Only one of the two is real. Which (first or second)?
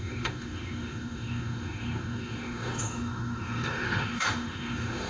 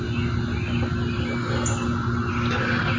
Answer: second